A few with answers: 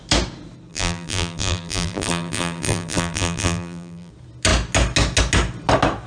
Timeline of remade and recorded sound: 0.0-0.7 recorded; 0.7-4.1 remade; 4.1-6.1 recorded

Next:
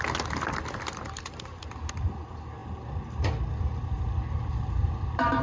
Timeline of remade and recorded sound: 0.0-5.4 recorded